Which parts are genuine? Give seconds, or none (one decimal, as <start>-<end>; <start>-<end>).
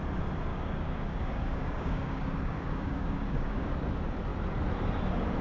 0.0-0.5; 3.7-5.4